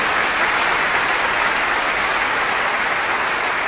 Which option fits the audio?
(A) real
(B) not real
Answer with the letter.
A